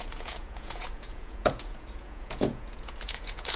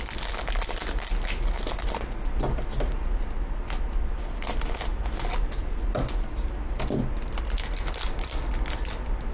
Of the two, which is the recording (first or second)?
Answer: second